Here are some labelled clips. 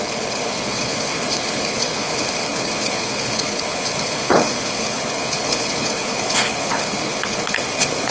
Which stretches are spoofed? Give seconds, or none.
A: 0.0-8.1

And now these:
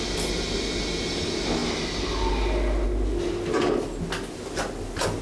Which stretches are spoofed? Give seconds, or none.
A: none

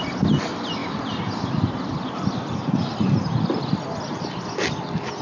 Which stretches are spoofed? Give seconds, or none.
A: none

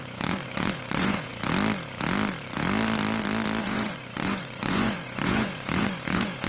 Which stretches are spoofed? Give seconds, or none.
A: 0.0-1.3; 3.6-6.5

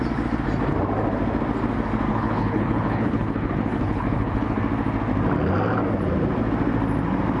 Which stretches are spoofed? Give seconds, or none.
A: 2.1-4.6